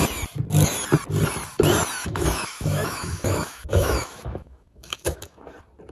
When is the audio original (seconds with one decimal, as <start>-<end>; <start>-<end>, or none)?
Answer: 0.0-2.0; 5.5-5.9